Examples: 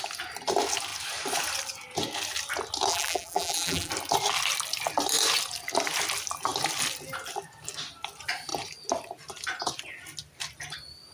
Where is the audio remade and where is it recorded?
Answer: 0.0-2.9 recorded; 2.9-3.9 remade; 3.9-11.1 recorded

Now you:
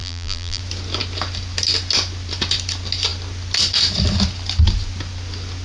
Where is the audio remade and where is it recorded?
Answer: 0.0-0.6 remade; 0.6-5.6 recorded

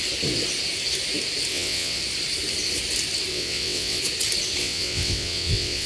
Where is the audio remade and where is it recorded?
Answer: 0.0-1.5 recorded; 1.5-2.0 remade; 2.0-3.3 recorded; 3.3-4.0 remade; 4.0-4.6 recorded; 4.6-5.9 remade

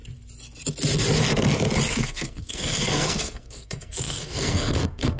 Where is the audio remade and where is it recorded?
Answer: 0.0-1.9 recorded; 1.9-5.2 remade

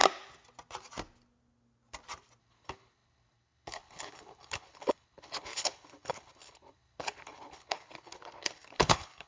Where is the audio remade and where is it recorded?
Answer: 0.0-2.4 recorded; 2.4-9.3 remade

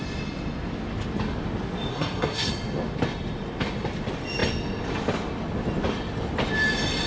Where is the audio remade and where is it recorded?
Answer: 0.0-1.9 recorded; 1.9-2.5 remade; 2.5-7.1 recorded

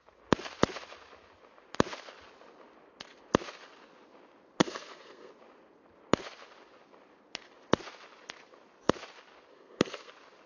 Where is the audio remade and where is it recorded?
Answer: 0.0-4.6 recorded; 4.6-5.3 remade; 5.3-9.5 recorded; 9.5-10.1 remade; 10.1-10.5 recorded

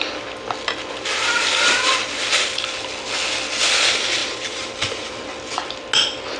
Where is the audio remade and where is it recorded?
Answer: 0.0-4.2 recorded; 4.2-5.7 remade; 5.7-6.4 recorded